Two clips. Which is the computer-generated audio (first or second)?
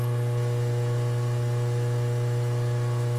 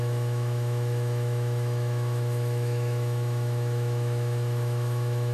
second